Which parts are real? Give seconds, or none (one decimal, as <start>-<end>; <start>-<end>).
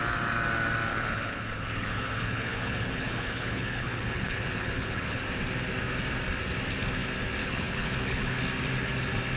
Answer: 0.0-0.9; 5.2-7.4; 8.4-9.4